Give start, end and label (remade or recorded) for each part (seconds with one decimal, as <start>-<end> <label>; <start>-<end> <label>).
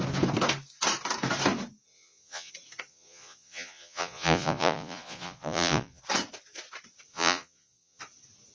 0.0-1.9 recorded; 1.9-2.5 remade; 2.5-2.9 recorded; 2.9-6.0 remade; 6.0-7.1 recorded; 7.1-8.0 remade; 8.0-8.5 recorded